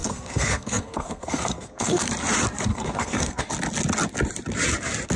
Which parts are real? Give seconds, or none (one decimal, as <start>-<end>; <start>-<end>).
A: 2.1-2.7; 3.4-5.2